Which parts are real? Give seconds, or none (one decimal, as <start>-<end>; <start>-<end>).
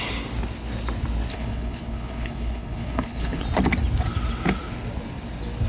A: 0.0-1.3; 3.4-5.7